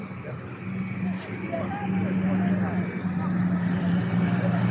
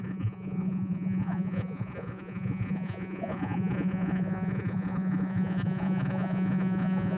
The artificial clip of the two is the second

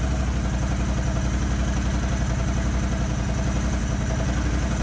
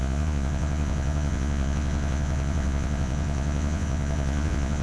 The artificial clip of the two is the second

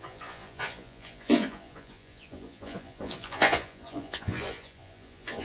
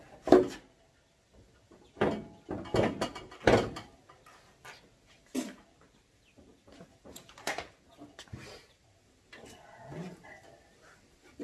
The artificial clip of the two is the first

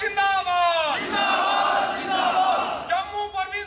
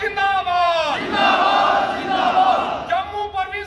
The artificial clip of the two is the second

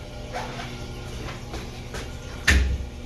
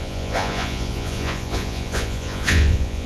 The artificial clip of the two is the second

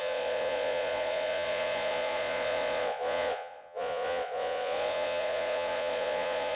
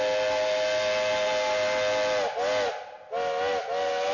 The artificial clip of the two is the first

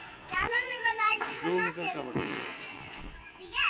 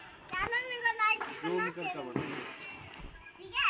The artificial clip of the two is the first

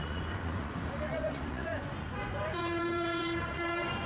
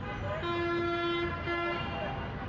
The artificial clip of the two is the first